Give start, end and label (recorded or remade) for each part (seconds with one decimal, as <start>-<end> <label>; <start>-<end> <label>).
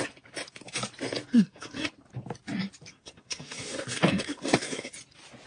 0.0-1.3 recorded; 1.3-1.9 remade; 1.9-2.9 recorded; 2.9-4.9 remade; 4.9-5.5 recorded